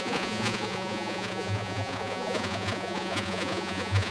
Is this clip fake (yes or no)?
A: yes